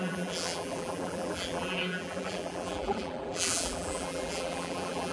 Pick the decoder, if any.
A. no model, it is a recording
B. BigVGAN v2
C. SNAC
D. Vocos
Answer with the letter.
B